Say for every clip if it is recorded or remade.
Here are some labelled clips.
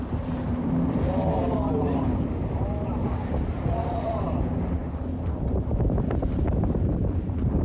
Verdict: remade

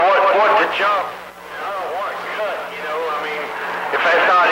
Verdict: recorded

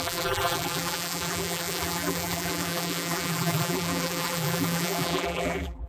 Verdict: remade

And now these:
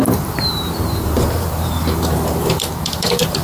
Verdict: remade